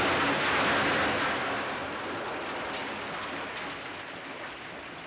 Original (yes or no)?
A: yes